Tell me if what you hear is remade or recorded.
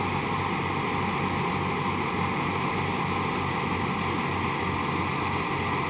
recorded